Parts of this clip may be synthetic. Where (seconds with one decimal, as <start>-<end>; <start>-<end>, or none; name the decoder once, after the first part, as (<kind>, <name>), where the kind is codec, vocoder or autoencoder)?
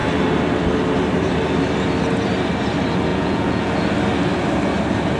3.1-3.7 (vocoder, Vocos)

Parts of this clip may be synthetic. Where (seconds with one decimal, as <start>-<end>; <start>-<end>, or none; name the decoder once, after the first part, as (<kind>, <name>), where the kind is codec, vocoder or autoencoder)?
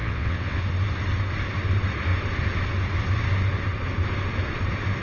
0.0-0.6 (vocoder, WaveNeXt)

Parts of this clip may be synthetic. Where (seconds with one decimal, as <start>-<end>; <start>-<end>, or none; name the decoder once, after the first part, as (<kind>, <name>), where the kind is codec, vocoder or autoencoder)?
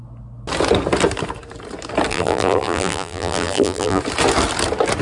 2.1-4.0 (vocoder, BigVGAN v2)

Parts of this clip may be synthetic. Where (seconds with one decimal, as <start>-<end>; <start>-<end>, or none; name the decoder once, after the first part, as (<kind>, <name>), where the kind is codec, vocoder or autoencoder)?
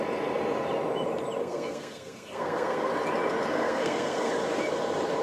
1.4-2.9 (codec, SNAC); 3.5-4.3